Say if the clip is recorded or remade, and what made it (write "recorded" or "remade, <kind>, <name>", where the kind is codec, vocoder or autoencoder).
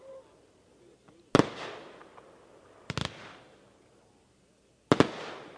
recorded